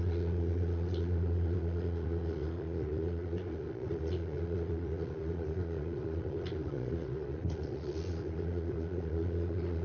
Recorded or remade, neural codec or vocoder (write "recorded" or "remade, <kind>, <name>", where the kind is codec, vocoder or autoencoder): remade, vocoder, Vocos